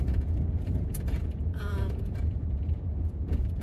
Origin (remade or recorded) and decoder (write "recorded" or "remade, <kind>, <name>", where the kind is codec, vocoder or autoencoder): remade, vocoder, Vocos